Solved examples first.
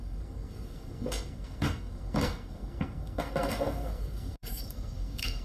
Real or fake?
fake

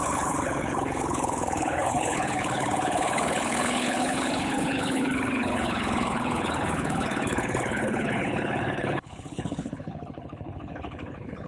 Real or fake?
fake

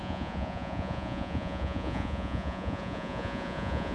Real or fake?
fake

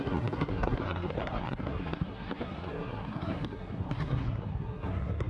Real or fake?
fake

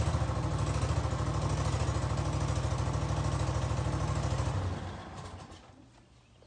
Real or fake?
real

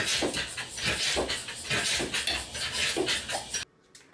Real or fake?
real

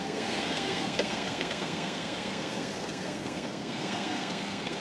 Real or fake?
fake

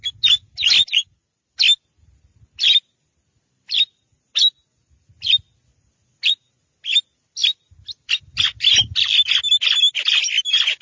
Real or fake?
real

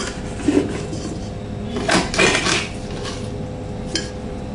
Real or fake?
real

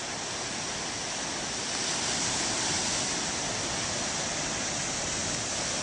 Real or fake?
real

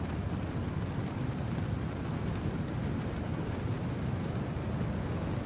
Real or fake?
real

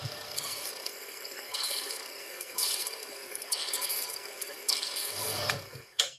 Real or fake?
fake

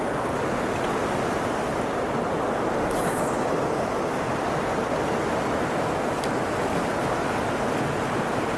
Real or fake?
real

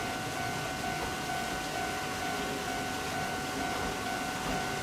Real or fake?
real